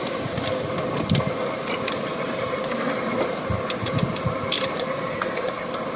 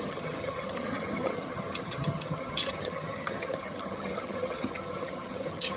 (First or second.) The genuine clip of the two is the first